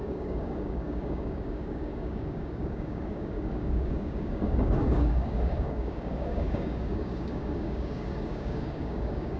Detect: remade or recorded remade